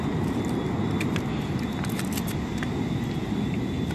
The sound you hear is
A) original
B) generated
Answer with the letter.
A